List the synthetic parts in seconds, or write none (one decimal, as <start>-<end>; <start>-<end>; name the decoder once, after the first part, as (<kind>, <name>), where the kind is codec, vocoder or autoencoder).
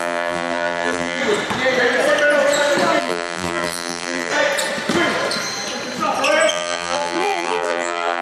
0.0-1.2 (vocoder, BigVGAN v2); 3.0-4.3; 6.5-8.2